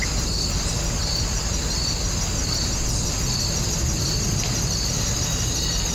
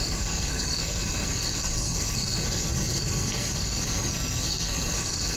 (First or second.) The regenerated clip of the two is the second